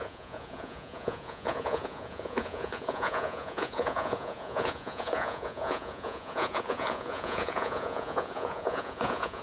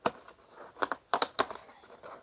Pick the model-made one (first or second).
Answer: first